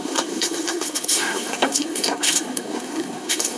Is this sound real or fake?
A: fake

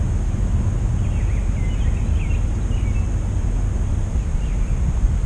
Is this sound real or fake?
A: real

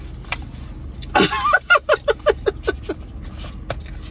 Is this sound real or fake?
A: real